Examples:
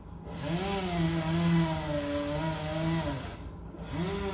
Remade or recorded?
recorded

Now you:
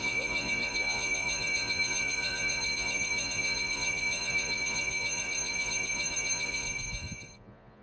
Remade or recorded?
remade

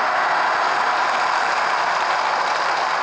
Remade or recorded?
recorded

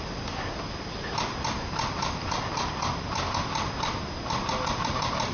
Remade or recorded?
recorded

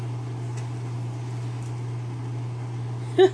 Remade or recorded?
recorded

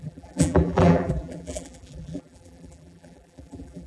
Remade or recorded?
remade